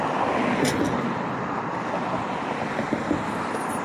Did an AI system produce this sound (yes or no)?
no